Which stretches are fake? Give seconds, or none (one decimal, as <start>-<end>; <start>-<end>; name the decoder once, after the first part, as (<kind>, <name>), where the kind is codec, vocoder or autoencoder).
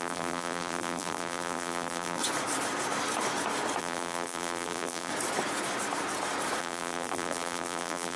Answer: 0.0-2.2 (vocoder, BigVGAN v2); 3.8-5.1; 6.6-8.2